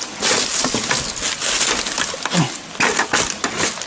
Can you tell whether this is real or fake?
real